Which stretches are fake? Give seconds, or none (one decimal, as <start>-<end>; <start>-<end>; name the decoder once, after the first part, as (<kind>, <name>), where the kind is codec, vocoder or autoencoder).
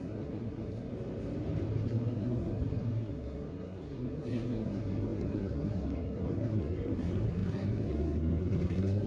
0.0-0.9 (codec, SNAC); 1.7-9.1